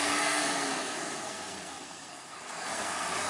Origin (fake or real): fake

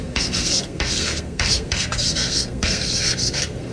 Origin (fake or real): fake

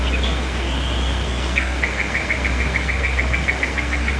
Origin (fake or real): fake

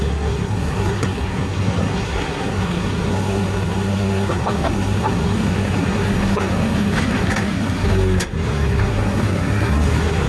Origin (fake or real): fake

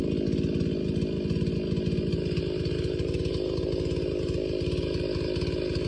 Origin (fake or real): real